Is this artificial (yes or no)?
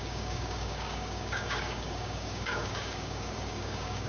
yes